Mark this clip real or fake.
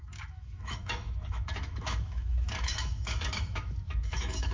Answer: fake